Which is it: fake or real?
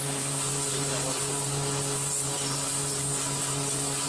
real